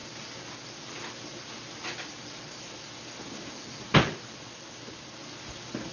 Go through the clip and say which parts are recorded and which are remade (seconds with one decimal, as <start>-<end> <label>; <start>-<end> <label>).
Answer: 0.0-5.9 recorded